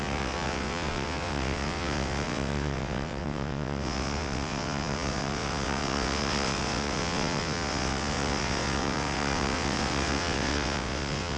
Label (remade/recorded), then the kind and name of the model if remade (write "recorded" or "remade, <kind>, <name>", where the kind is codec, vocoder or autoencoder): remade, vocoder, WaveNeXt